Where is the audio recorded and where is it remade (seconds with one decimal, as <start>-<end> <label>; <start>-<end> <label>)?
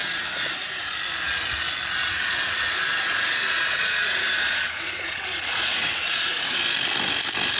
0.0-0.9 remade; 0.9-2.0 recorded; 2.0-6.6 remade; 6.6-7.6 recorded